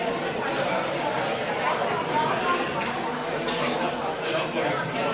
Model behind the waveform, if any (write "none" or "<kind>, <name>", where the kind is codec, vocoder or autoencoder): none